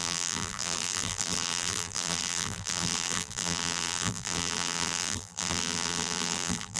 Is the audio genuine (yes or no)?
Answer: no